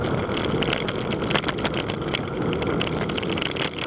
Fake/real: real